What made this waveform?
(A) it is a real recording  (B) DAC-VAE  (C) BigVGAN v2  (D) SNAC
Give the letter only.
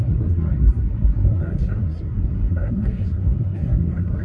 D